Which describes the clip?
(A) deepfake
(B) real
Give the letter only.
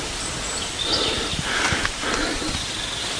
A